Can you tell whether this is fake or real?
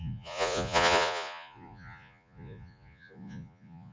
fake